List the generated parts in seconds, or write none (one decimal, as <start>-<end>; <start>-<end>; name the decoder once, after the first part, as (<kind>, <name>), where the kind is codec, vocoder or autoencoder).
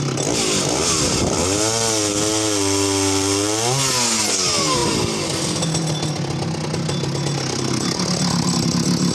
none